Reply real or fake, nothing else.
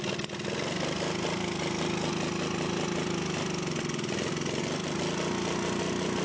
real